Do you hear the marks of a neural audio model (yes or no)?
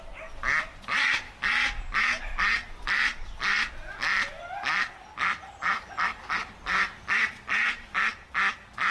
no